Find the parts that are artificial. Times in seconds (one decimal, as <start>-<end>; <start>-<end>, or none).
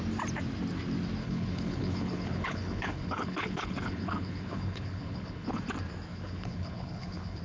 1.2-5.6; 6.1-7.4